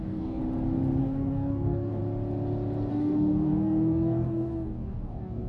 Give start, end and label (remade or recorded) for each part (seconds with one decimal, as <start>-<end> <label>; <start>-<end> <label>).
0.0-0.4 remade; 0.4-1.0 recorded; 1.0-2.0 remade; 2.0-2.9 recorded; 2.9-5.5 remade